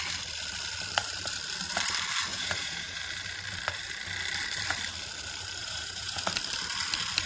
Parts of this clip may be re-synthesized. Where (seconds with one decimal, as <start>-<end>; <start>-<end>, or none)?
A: 2.3-3.0; 5.6-6.2